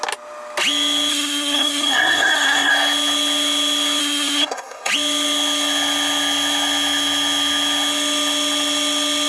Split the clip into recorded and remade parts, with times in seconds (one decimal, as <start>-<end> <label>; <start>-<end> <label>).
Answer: 0.0-1.1 recorded; 1.1-2.7 remade; 2.7-4.0 recorded; 4.0-4.9 remade; 4.9-9.3 recorded